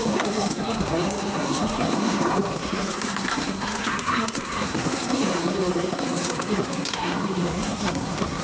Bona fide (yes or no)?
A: no